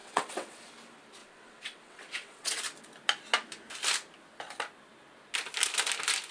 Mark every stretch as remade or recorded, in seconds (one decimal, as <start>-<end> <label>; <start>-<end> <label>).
0.0-0.7 remade; 0.7-1.2 recorded; 1.2-2.6 remade; 2.6-6.3 recorded